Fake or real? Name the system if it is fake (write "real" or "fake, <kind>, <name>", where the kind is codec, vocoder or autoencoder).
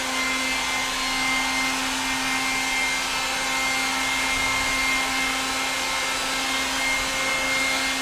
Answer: real